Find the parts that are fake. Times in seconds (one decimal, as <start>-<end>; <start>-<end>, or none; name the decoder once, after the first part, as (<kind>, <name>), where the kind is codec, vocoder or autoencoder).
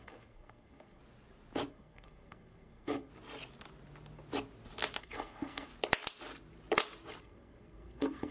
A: 0.0-1.0 (codec, SNAC); 1.7-3.1; 5.0-5.7; 7.2-8.3